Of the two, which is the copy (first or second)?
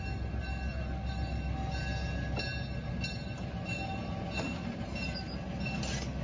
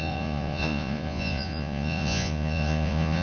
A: second